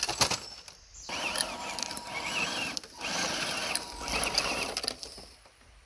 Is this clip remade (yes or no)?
no